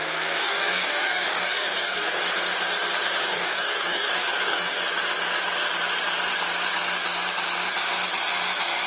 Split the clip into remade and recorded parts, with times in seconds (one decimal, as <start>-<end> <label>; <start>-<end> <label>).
0.0-0.4 recorded; 0.4-2.2 remade; 2.2-3.2 recorded; 3.2-4.8 remade; 4.8-8.9 recorded